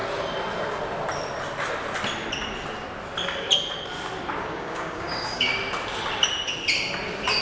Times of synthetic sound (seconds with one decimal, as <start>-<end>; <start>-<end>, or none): 4.4-5.5